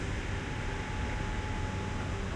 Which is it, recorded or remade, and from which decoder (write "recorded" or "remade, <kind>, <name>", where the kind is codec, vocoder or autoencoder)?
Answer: recorded